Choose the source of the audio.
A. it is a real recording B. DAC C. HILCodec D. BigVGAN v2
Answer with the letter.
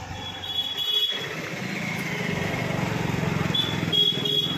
A